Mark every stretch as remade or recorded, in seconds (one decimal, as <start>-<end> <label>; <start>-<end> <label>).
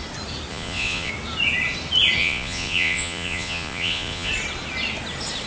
0.0-0.5 recorded; 0.5-1.1 remade; 1.1-2.2 recorded; 2.2-4.3 remade; 4.3-5.5 recorded